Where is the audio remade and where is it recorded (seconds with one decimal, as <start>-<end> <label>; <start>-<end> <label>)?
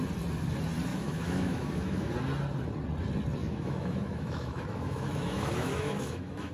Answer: 0.0-0.9 recorded; 0.9-2.1 remade; 2.1-3.4 recorded; 3.4-6.5 remade